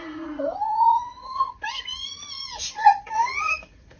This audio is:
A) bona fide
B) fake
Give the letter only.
B